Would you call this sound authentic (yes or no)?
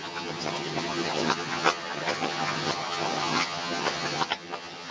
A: no